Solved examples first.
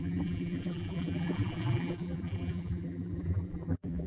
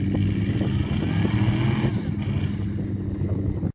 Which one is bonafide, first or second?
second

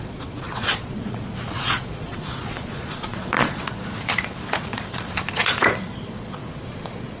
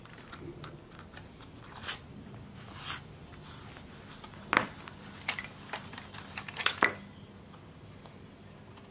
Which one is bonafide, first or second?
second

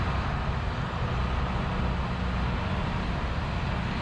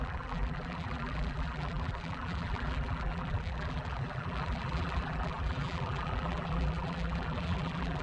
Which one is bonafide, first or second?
first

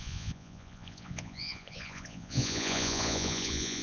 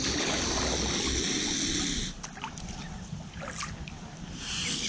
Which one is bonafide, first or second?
second